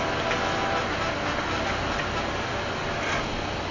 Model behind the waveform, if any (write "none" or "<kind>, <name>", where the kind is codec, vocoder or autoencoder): none